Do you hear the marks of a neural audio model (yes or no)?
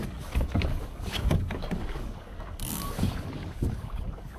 yes